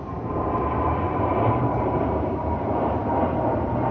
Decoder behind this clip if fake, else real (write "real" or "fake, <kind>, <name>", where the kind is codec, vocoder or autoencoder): fake, vocoder, BigVGAN v2